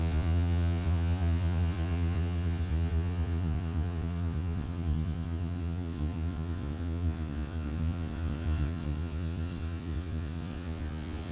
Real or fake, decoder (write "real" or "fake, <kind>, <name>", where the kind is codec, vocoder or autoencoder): fake, vocoder, Vocos